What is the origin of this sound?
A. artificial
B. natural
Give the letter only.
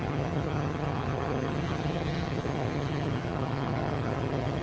A